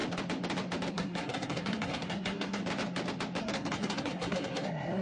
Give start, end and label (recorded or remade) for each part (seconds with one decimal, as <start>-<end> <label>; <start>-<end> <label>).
0.0-0.9 recorded; 0.9-2.6 remade; 2.6-3.4 recorded; 3.4-5.0 remade